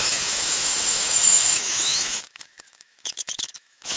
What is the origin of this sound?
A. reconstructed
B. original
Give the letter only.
A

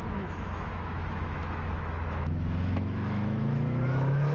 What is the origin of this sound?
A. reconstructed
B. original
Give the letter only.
A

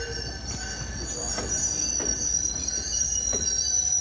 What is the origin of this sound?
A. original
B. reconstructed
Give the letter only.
A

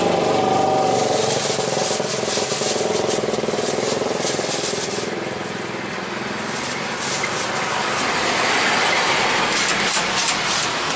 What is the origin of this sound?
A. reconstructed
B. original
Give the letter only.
B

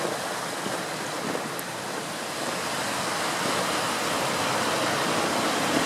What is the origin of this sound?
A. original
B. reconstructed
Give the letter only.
A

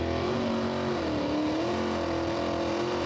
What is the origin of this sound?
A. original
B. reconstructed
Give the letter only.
A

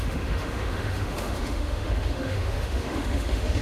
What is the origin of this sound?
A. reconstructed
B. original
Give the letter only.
A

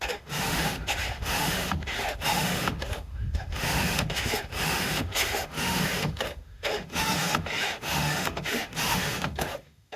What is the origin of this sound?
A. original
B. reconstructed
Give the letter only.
B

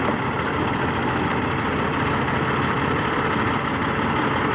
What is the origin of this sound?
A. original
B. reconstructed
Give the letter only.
A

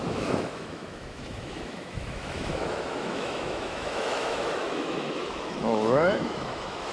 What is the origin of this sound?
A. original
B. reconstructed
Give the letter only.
B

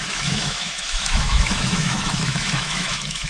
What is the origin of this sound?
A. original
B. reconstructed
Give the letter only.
B